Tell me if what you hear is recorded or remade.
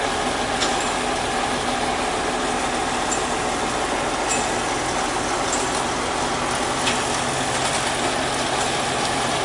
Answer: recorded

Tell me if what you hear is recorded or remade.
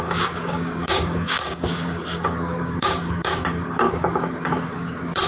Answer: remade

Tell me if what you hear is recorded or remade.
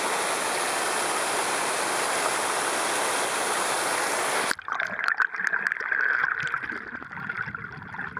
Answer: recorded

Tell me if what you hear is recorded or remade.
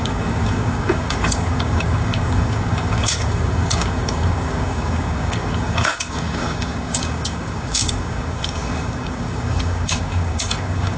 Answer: remade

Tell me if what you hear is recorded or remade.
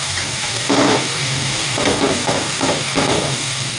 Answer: remade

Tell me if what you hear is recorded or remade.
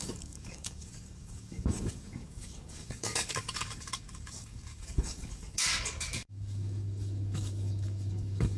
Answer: remade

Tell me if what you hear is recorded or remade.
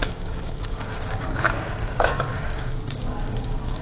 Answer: remade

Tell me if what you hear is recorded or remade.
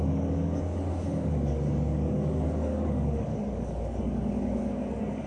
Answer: remade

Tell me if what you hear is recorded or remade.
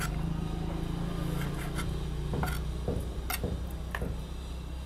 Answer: recorded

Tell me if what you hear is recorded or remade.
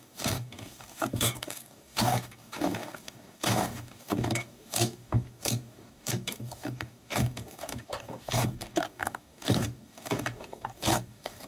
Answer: remade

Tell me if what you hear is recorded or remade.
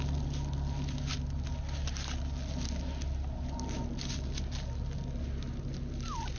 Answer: recorded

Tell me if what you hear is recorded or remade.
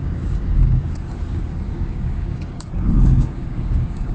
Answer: remade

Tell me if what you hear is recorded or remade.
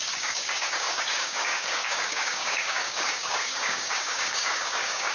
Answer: remade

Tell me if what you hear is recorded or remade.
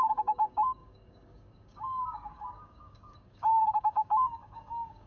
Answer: remade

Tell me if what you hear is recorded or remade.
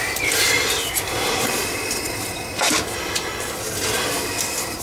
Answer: recorded